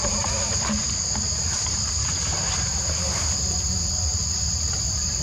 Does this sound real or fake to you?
fake